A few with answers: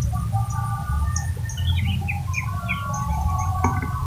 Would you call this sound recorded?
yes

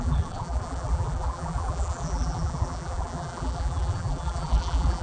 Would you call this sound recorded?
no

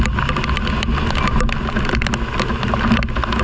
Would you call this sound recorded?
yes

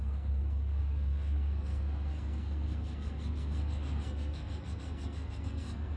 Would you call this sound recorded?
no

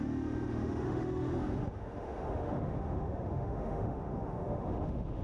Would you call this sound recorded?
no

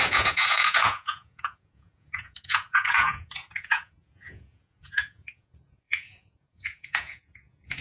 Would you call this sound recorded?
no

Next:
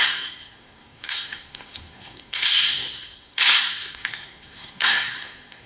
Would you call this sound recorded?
no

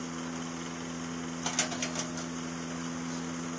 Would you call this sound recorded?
yes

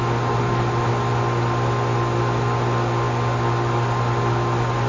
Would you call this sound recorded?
yes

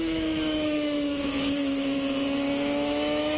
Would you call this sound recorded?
no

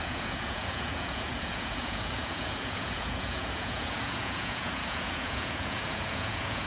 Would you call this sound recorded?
no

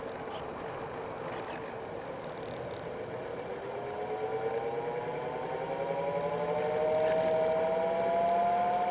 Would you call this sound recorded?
yes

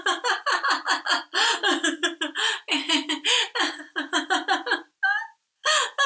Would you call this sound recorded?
yes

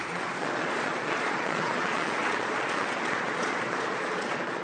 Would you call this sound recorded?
no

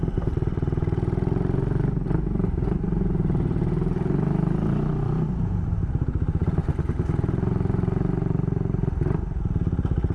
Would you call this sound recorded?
no